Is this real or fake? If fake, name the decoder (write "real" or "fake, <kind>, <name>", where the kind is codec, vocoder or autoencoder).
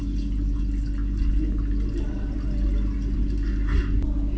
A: real